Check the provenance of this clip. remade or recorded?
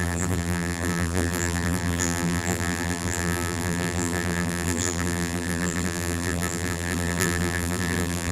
remade